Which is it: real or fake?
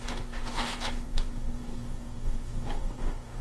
fake